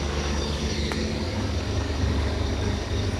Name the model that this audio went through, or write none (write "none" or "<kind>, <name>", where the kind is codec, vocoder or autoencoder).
codec, DAC